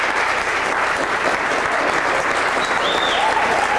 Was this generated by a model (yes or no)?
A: no